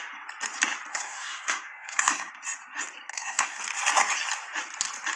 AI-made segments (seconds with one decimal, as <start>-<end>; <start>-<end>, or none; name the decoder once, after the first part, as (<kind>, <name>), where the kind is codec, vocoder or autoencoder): 0.9-2.3 (codec, SNAC); 3.1-3.6